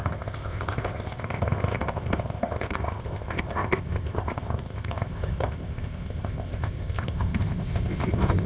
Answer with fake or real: fake